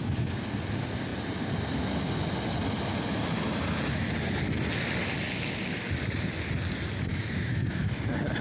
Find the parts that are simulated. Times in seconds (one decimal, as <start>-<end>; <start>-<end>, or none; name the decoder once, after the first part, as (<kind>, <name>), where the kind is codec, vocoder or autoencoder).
7.1-7.8 (autoencoder, DAC-VAE)